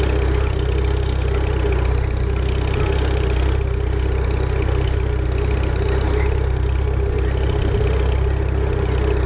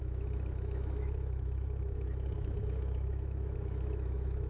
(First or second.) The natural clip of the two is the first